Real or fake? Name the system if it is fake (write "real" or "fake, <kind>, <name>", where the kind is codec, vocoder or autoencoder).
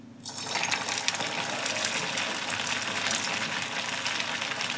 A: real